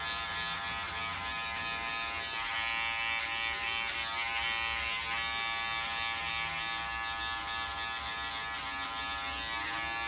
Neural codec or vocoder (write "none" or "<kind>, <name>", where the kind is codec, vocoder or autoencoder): none